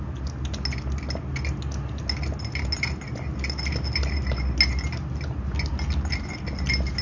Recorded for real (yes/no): yes